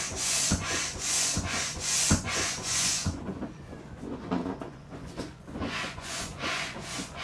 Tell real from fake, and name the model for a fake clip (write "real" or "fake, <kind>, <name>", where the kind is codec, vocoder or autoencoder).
fake, vocoder, Vocos